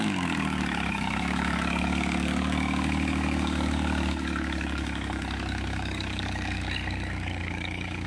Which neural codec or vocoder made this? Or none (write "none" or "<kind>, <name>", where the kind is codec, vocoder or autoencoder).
codec, DAC